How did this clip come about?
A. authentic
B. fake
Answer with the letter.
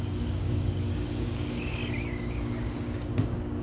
B